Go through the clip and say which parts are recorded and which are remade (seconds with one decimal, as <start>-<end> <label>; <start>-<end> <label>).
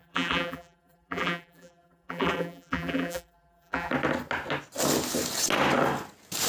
0.0-3.9 remade; 3.9-6.5 recorded